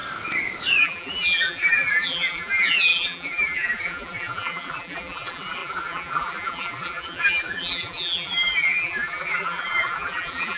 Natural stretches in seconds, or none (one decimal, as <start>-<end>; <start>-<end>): 0.0-0.8